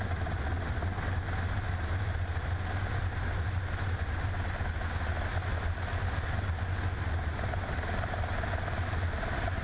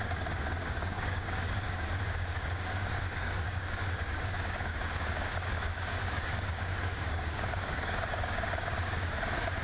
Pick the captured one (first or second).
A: first